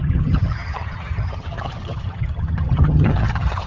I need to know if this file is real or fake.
fake